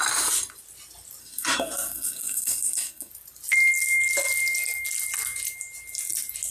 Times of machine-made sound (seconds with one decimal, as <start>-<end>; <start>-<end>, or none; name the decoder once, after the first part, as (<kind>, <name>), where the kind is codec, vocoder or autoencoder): 1.2-3.1 (codec, SNAC)